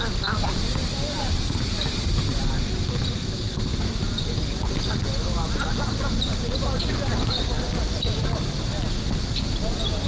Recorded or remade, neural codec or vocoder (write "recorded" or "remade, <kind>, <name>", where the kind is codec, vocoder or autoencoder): recorded